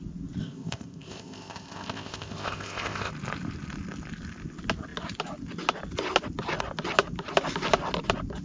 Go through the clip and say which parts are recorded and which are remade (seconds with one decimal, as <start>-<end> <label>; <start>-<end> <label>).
0.0-0.4 recorded; 0.4-3.1 remade; 3.1-8.4 recorded

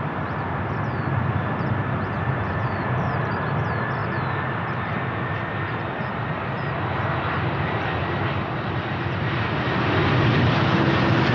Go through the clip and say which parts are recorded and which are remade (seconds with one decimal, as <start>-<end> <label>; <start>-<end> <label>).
0.0-11.3 recorded

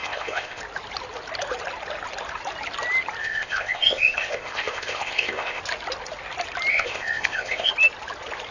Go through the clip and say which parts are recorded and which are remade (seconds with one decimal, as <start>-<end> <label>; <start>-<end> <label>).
0.0-0.6 remade; 0.6-3.2 recorded; 3.2-5.6 remade; 5.6-6.7 recorded; 6.7-7.7 remade; 7.7-8.5 recorded

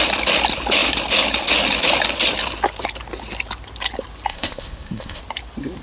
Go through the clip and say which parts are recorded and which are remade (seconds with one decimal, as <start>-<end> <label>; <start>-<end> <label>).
0.0-4.3 recorded; 4.3-5.2 remade; 5.2-5.8 recorded

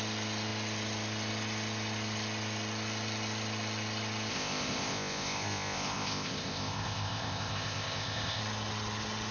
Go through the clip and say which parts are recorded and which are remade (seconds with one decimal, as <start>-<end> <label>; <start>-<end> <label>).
0.0-4.3 recorded; 4.3-8.4 remade; 8.4-9.3 recorded

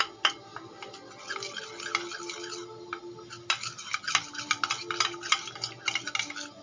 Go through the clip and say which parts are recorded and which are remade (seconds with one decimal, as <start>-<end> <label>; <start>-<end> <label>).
0.0-6.6 recorded